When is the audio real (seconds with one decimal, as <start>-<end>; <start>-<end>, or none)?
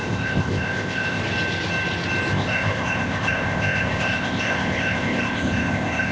1.2-2.3